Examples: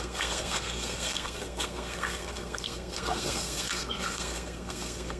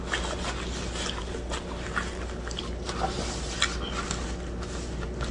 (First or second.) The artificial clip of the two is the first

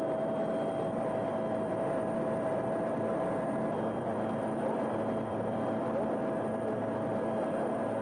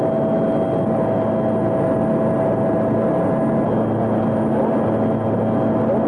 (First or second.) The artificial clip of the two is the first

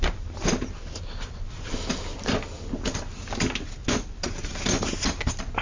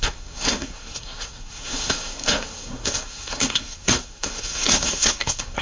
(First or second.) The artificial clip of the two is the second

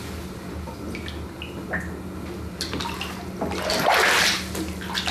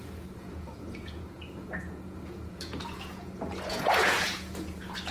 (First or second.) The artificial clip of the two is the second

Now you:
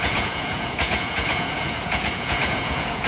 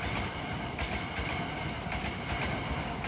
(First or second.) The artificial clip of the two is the first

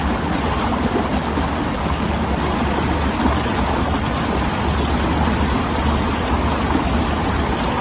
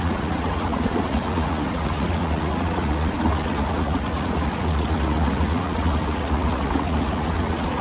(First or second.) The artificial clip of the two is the second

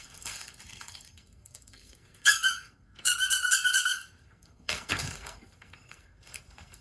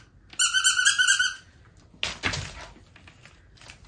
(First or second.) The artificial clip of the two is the first